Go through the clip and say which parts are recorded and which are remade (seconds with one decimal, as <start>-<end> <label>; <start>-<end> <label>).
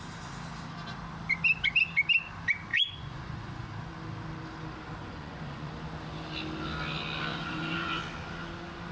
0.0-2.7 recorded; 2.7-3.7 remade; 3.7-5.0 recorded; 5.0-5.7 remade; 5.7-7.3 recorded; 7.3-8.0 remade; 8.0-8.9 recorded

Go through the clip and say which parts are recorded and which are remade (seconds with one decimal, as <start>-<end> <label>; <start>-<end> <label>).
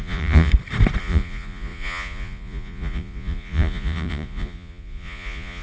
0.0-0.5 remade; 0.5-1.0 recorded; 1.0-5.6 remade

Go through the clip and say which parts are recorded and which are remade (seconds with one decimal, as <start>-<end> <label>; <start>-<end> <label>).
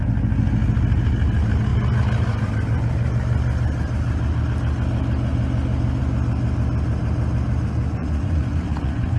0.0-8.0 recorded; 8.0-9.2 remade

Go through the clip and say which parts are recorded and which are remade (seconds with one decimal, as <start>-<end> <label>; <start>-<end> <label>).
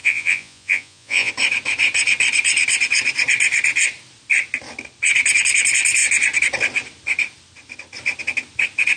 0.0-1.3 remade; 1.3-9.0 recorded